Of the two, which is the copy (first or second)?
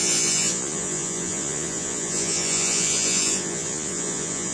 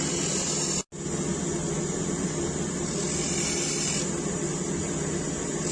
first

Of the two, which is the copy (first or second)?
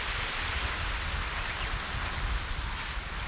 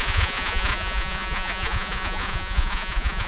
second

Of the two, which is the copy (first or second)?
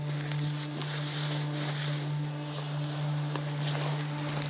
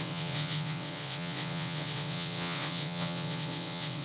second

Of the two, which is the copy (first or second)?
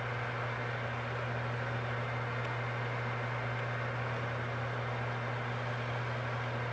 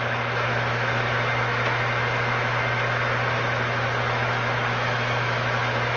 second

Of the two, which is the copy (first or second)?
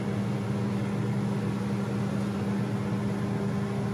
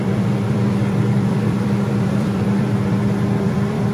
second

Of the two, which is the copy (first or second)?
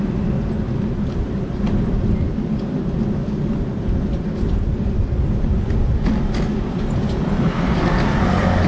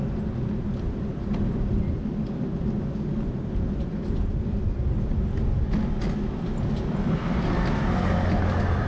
first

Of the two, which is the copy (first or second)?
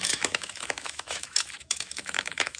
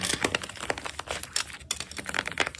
first